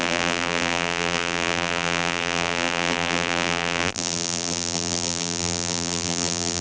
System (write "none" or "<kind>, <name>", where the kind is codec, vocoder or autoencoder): vocoder, BigVGAN v2